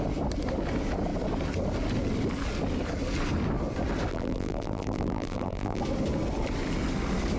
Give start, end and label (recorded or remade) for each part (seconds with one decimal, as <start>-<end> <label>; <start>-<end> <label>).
0.0-4.1 recorded; 4.1-5.8 remade; 5.8-7.4 recorded

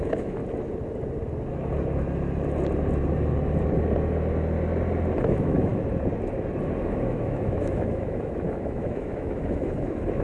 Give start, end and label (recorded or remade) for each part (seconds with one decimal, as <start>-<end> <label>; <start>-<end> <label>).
0.0-0.4 remade; 0.4-5.2 recorded; 5.2-5.7 remade; 5.7-6.8 recorded; 6.8-10.2 remade

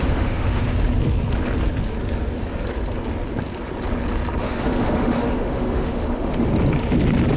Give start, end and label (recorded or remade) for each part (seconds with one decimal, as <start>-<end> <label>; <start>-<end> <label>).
0.0-0.6 remade; 0.6-4.4 recorded; 4.4-6.5 remade; 6.5-7.4 recorded

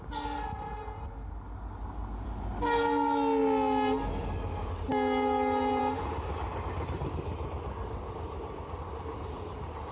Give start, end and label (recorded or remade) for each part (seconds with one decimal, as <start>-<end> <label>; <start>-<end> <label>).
0.0-9.9 recorded